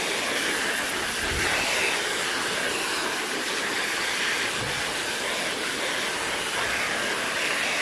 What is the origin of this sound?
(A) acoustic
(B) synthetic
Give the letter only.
A